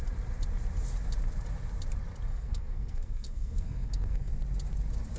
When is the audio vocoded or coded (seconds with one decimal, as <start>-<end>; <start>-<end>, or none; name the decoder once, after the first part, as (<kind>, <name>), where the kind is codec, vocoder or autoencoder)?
2.3-4.3 (codec, SNAC)